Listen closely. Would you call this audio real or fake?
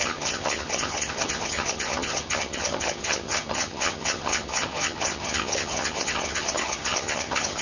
fake